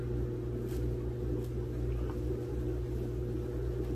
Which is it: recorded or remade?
recorded